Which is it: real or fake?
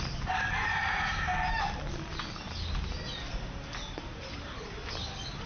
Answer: real